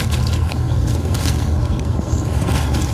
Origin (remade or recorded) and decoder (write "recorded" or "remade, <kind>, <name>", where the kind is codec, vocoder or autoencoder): remade, codec, SNAC